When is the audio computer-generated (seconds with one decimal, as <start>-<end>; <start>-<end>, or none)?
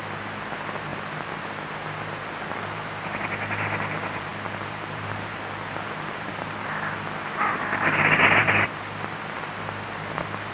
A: 4.3-5.4; 8.4-9.2